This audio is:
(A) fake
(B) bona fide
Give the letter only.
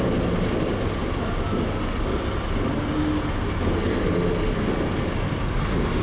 B